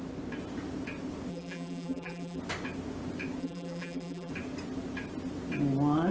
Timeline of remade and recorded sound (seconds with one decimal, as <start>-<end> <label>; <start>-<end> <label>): 0.0-1.3 recorded; 1.3-2.4 remade; 2.4-3.4 recorded; 3.4-4.3 remade; 4.3-6.1 recorded